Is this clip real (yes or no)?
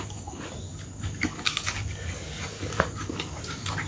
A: no